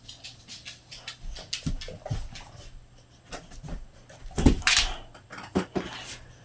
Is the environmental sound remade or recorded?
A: recorded